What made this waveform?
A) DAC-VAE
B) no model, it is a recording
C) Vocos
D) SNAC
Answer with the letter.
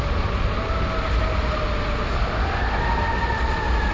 B